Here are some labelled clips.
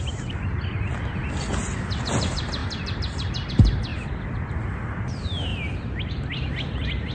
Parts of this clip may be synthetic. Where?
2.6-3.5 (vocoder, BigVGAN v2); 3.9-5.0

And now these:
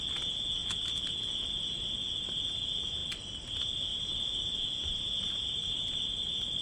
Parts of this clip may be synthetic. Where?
3.9-5.8 (vocoder, BigVGAN v2)

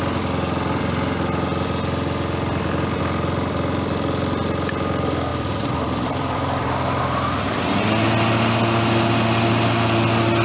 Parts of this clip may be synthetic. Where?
5.3-7.0 (vocoder, BigVGAN v2)

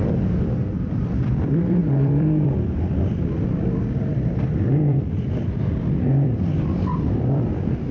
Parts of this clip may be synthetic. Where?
0.0-7.9 (vocoder, BigVGAN v2)